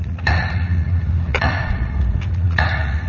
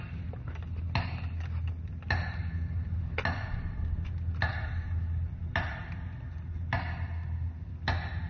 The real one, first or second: second